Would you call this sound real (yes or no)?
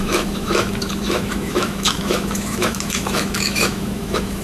no